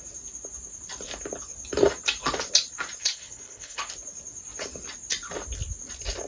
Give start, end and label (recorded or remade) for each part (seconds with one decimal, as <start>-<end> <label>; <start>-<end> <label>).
0.0-3.0 recorded; 3.0-3.8 remade; 3.8-6.3 recorded